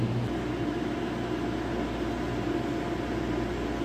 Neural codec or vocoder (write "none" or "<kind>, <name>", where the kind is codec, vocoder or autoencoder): none